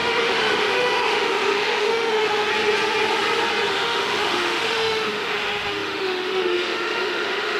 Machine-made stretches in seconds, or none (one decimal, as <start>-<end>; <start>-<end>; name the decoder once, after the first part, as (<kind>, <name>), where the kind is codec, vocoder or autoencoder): 0.0-2.5 (autoencoder, DAC-VAE); 3.7-7.6